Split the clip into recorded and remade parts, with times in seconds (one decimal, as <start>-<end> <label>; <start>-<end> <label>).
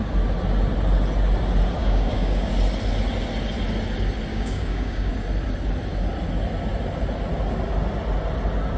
0.0-1.8 recorded; 1.8-2.5 remade; 2.5-4.3 recorded; 4.3-5.1 remade; 5.1-8.8 recorded